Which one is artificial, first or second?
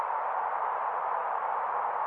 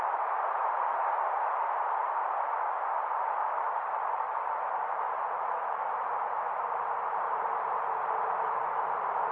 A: second